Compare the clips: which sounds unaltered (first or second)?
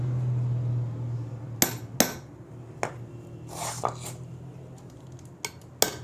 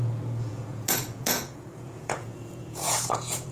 first